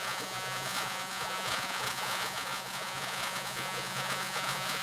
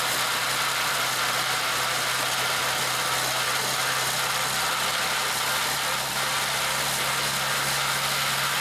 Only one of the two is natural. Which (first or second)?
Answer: second